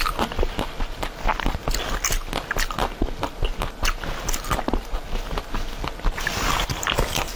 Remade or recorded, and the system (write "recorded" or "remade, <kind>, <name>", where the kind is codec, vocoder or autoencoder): recorded